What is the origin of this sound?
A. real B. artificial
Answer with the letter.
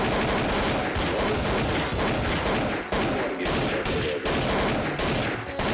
A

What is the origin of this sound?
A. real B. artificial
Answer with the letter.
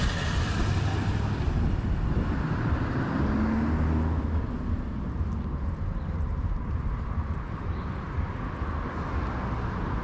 A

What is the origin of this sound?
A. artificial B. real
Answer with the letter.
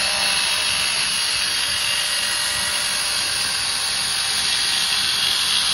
B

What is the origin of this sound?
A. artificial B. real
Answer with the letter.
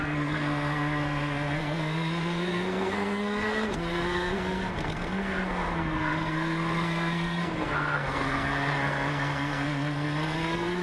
A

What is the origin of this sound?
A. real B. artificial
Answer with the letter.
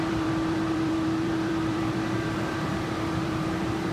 B